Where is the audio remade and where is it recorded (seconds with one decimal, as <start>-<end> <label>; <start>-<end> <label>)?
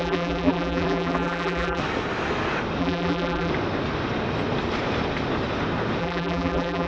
0.0-1.8 remade; 1.8-2.8 recorded; 2.8-3.5 remade; 3.5-6.0 recorded; 6.0-6.9 remade